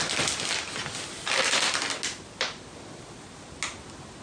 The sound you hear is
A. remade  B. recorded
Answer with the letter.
B